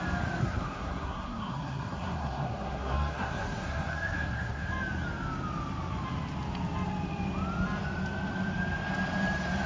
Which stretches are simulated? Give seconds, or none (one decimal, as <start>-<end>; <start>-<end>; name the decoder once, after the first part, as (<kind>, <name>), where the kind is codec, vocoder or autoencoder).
0.4-4.7 (codec, SNAC)